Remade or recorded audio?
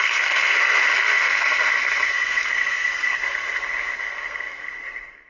remade